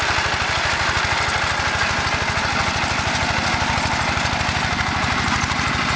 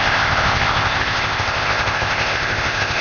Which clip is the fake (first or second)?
second